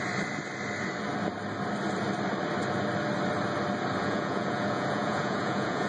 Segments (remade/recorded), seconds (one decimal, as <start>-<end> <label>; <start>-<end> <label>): 0.0-4.0 recorded; 4.0-5.9 remade

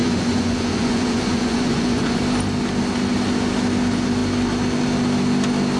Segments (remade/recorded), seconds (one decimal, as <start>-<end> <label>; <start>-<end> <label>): 0.0-2.2 remade; 2.2-5.8 recorded

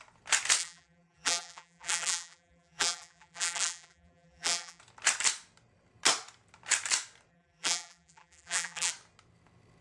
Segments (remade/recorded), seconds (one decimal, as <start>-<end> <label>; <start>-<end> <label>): 0.0-0.6 recorded; 0.6-4.8 remade; 4.8-7.3 recorded; 7.3-8.9 remade; 8.9-9.8 recorded

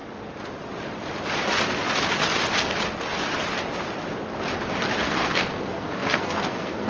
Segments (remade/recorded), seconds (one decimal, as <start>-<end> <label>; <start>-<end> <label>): 0.0-5.0 recorded; 5.0-6.9 remade

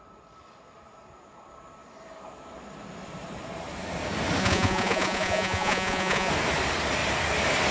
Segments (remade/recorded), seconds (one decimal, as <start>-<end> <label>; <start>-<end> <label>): 0.0-4.4 recorded; 4.4-6.3 remade; 6.3-7.7 recorded

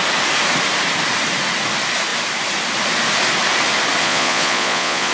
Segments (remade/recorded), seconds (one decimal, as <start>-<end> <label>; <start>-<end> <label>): 0.0-4.0 recorded; 4.0-5.1 remade

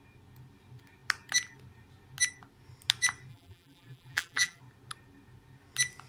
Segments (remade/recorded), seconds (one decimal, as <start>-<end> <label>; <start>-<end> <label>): 0.0-3.3 recorded; 3.3-4.6 remade; 4.6-6.1 recorded